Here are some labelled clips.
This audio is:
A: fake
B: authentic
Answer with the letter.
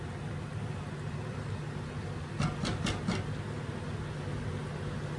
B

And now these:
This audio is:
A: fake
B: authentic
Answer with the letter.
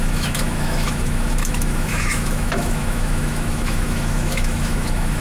A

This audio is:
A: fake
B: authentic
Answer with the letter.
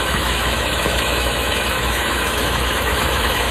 A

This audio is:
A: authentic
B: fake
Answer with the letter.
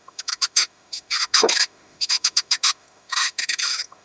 B